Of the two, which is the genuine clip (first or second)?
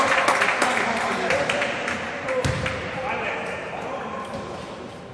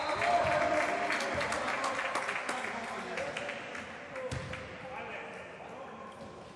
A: second